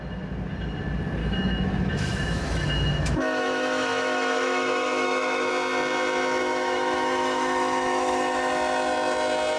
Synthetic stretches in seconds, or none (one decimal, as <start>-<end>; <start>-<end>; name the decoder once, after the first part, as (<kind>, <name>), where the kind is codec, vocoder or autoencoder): 1.2-5.5 (autoencoder, DAC-VAE); 6.4-8.5

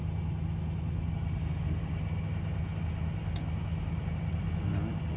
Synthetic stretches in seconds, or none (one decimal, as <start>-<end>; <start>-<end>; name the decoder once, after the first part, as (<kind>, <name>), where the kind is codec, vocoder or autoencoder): none

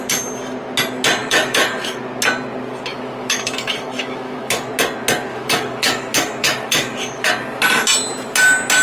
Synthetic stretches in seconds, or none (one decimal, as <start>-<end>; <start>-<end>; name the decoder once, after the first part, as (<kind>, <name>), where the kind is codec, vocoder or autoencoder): 1.2-2.0 (autoencoder, DAC-VAE); 2.9-4.7; 5.3-7.3

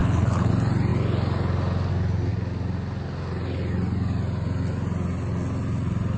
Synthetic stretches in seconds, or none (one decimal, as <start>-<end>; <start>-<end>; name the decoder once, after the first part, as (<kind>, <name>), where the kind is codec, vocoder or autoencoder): 0.0-0.5 (codec, HILCodec)

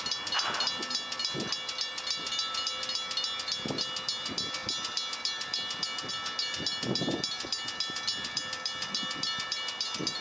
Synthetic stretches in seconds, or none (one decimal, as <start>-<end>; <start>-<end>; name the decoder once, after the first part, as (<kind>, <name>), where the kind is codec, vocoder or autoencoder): none

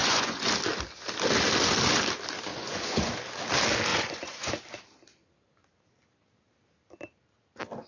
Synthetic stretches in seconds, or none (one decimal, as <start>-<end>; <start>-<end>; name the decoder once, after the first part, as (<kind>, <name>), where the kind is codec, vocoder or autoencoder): 0.0-0.5 (vocoder, Vocos); 2.5-3.1; 3.9-4.5

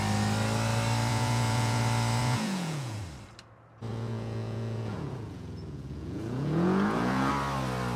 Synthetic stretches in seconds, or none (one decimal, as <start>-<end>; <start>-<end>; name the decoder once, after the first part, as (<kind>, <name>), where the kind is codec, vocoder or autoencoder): 1.1-1.8 (vocoder, Vocos); 2.2-3.0; 3.9-7.3